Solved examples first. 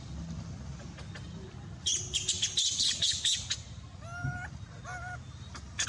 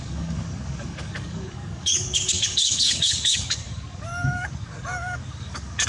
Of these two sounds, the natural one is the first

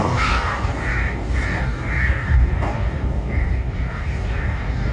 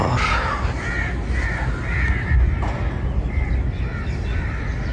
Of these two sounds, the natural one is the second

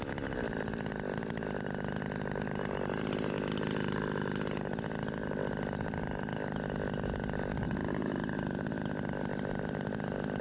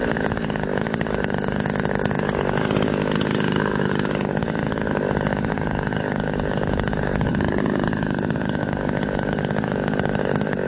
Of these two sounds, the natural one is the first